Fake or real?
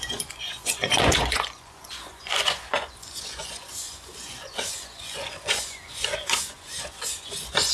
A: fake